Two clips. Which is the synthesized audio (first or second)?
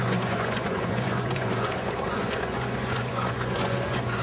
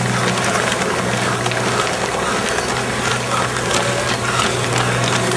first